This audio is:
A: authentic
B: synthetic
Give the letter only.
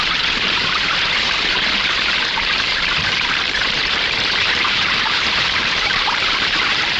B